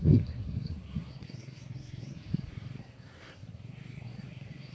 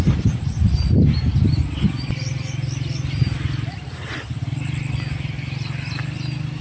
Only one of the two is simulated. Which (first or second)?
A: first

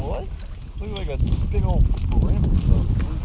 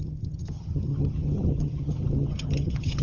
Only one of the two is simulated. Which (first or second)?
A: second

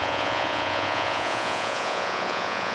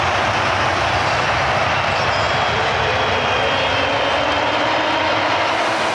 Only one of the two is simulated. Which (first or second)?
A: first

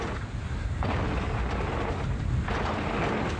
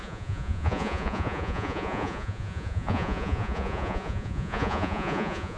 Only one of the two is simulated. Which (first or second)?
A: second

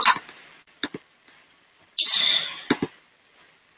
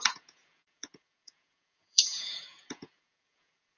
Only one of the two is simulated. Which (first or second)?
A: second